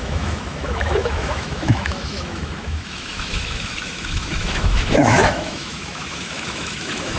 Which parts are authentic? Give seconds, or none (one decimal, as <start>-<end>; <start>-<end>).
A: none